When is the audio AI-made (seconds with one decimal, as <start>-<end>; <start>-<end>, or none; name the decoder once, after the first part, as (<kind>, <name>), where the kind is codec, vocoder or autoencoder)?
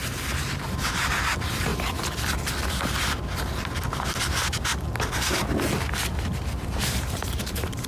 0.0-1.7 (vocoder, BigVGAN v2); 6.4-7.9